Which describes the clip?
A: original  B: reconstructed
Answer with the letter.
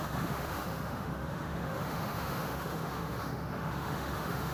B